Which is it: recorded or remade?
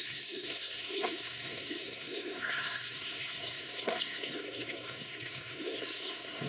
remade